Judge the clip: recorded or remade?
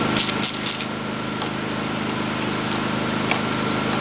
recorded